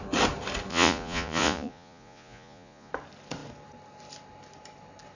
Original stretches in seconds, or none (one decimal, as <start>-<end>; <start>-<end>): 0.0-0.7; 2.9-5.2